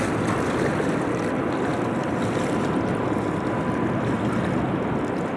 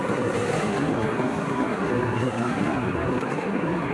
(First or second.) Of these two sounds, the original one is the first